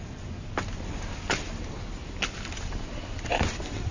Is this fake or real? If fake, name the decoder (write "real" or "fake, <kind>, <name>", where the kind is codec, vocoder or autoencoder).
real